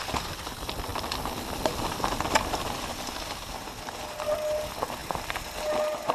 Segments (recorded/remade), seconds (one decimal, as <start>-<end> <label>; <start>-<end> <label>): 0.0-6.1 recorded